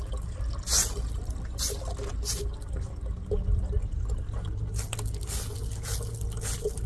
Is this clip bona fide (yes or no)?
yes